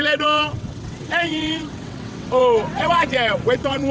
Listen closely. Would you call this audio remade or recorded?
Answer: remade